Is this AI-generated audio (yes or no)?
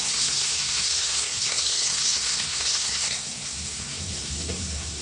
yes